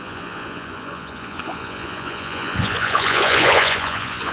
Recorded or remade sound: remade